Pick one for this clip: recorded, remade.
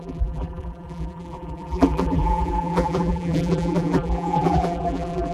remade